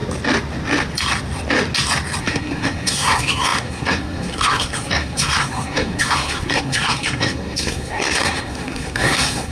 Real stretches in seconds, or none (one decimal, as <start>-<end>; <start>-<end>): 0.0-2.2